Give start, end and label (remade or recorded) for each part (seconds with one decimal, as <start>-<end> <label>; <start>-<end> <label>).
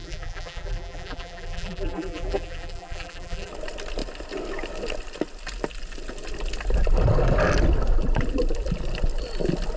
0.0-3.5 remade; 3.5-9.8 recorded